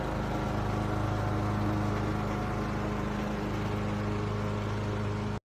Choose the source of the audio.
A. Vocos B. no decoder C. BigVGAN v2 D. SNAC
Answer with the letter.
B